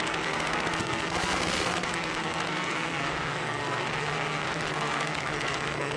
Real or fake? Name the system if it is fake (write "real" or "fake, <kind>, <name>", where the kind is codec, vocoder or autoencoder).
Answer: fake, codec, SNAC